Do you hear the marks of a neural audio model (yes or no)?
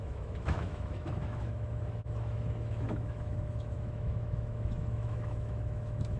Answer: yes